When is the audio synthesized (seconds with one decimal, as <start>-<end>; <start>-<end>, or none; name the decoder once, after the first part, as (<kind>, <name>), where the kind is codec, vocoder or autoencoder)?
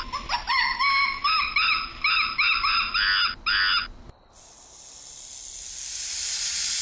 none